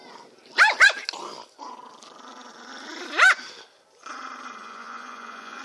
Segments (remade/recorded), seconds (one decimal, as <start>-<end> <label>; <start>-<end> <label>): 0.0-4.6 recorded; 4.6-5.6 remade